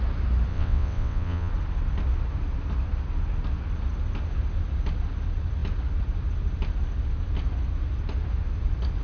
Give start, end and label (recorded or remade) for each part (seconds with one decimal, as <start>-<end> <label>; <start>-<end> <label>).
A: 0.0-0.5 recorded; 0.5-1.5 remade; 1.5-9.0 recorded